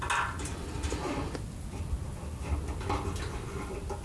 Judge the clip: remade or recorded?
recorded